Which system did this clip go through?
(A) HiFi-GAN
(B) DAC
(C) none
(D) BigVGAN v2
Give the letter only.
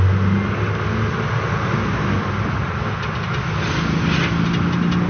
C